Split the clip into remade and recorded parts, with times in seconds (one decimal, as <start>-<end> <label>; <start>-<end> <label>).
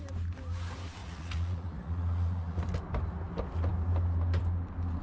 0.0-1.0 recorded; 1.0-2.6 remade; 2.6-5.0 recorded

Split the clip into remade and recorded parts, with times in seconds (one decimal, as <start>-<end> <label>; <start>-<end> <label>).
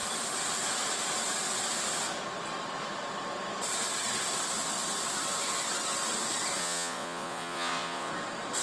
0.0-6.6 recorded; 6.6-8.1 remade; 8.1-8.6 recorded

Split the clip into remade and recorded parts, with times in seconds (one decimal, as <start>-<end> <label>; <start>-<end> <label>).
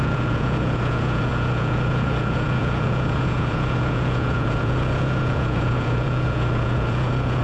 0.0-7.4 remade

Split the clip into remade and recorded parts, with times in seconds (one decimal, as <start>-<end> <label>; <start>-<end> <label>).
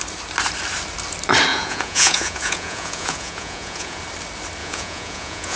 0.0-1.5 recorded; 1.5-4.0 remade; 4.0-4.6 recorded; 4.6-5.6 remade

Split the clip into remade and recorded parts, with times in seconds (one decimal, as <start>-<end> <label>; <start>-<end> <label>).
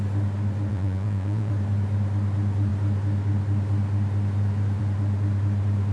0.0-0.7 recorded; 0.7-1.5 remade; 1.5-5.9 recorded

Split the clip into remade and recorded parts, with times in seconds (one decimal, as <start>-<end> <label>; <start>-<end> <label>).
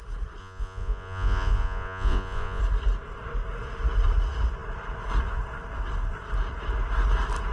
0.0-0.4 recorded; 0.4-2.6 remade; 2.6-7.5 recorded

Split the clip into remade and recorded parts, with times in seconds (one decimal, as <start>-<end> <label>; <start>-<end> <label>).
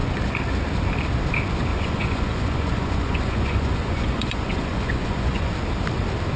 0.0-1.7 recorded; 1.7-5.5 remade; 5.5-6.4 recorded